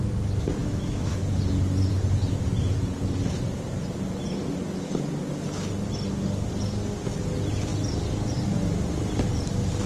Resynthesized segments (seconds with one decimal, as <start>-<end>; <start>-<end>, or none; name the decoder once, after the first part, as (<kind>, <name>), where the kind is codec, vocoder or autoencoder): 0.6-1.2 (autoencoder, DAC-VAE)